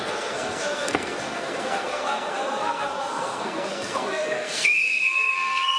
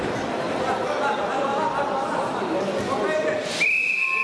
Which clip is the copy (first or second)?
first